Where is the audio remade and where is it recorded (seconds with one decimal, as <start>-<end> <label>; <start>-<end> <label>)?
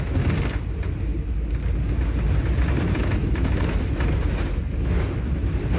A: 0.0-3.2 recorded; 3.2-3.9 remade; 3.9-5.8 recorded